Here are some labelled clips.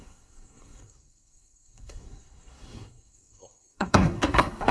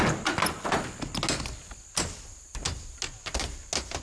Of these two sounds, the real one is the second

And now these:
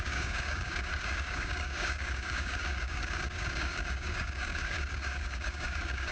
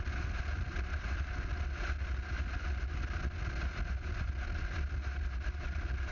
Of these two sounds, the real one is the second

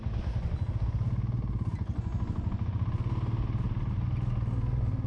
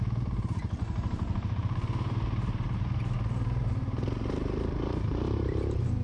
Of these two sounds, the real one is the first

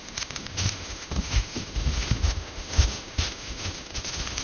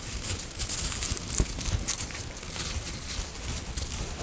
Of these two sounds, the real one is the second